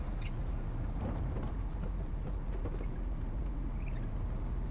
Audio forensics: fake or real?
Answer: real